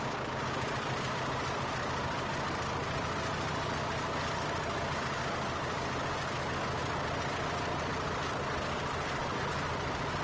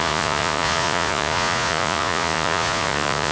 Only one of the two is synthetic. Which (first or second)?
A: second